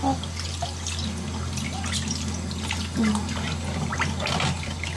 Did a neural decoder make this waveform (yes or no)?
no